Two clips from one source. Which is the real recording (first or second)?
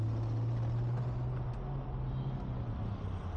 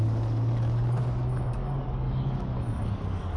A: first